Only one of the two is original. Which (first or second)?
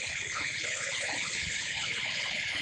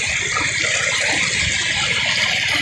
second